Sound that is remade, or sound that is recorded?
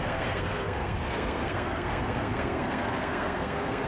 remade